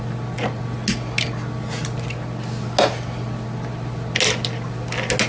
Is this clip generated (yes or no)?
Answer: no